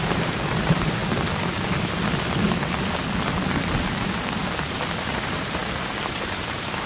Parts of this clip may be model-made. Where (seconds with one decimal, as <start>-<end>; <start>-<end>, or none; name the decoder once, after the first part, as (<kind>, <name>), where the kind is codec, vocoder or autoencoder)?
0.0-1.0 (vocoder, BigVGAN v2); 3.9-4.4; 5.1-5.6; 6.1-6.9